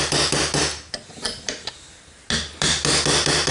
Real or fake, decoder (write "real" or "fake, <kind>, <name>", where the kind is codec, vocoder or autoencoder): real